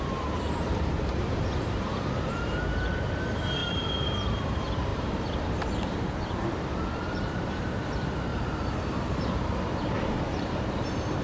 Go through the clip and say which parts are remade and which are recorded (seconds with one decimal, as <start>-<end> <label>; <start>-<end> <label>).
0.0-8.3 remade; 8.3-8.8 recorded; 8.8-11.2 remade